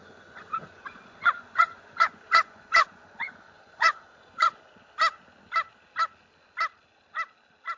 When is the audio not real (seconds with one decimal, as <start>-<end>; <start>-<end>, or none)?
0.0-4.7